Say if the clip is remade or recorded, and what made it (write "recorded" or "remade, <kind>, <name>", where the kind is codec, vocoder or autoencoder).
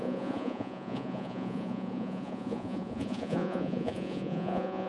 remade, vocoder, Vocos